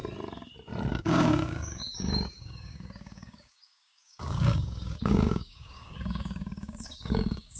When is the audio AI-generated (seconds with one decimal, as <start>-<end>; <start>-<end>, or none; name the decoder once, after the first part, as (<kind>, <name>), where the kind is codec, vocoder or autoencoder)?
0.9-7.6 (codec, DAC)